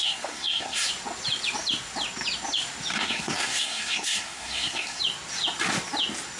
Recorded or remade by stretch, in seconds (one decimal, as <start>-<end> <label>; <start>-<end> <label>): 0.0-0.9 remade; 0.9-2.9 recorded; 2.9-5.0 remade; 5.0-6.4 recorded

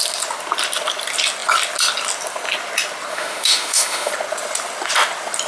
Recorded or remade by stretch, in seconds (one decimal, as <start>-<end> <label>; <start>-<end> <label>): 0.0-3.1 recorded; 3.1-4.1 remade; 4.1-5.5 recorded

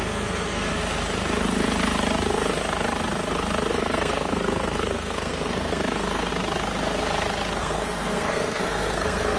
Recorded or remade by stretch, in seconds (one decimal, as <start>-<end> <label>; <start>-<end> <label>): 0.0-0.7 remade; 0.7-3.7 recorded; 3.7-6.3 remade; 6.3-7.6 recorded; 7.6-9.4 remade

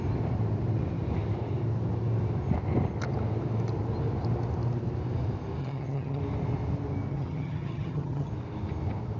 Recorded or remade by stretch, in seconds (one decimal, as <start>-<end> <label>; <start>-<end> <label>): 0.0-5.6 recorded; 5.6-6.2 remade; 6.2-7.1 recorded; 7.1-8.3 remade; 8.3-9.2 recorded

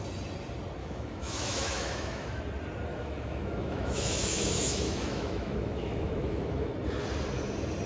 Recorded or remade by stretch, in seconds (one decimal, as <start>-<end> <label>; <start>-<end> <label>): 0.0-0.8 recorded; 0.8-2.4 remade; 2.4-2.9 recorded; 2.9-6.7 remade; 6.7-7.9 recorded

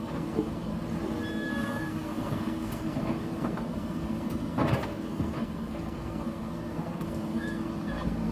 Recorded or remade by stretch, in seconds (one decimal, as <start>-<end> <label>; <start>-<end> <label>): 0.0-0.7 remade; 0.7-1.3 recorded; 1.3-8.3 remade

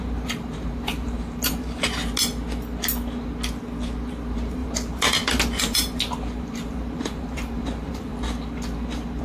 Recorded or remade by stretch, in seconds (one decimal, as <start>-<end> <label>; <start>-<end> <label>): 0.0-2.0 remade; 2.0-4.1 recorded; 4.1-8.1 remade; 8.1-9.2 recorded

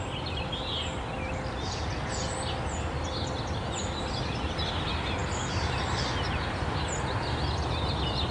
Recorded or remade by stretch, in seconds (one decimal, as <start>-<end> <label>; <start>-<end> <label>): 0.0-8.3 recorded